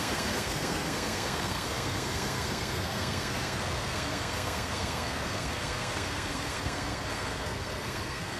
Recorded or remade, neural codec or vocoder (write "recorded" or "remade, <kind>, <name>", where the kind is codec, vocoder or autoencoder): remade, codec, SNAC